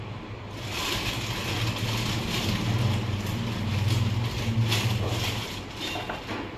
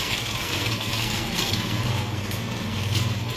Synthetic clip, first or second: second